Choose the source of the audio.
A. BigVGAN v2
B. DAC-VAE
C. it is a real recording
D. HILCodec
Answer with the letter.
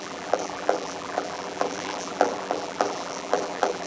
A